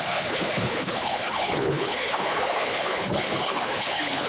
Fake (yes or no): yes